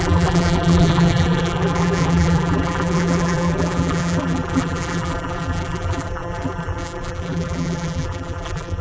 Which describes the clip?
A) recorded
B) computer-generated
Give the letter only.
B